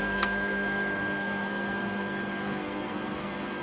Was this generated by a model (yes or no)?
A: yes